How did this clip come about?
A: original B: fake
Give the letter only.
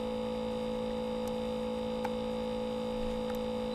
A